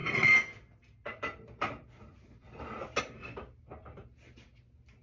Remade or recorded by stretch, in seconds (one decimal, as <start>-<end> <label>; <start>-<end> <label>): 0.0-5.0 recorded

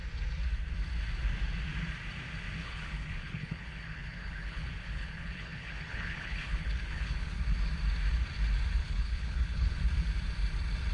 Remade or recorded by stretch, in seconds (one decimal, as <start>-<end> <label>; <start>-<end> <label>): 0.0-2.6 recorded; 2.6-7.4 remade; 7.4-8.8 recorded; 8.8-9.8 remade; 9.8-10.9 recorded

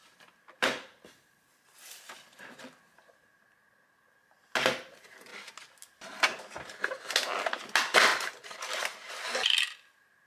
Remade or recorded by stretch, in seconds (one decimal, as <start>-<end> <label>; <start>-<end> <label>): 0.0-10.3 recorded